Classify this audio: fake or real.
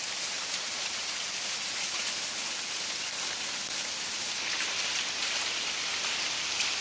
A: real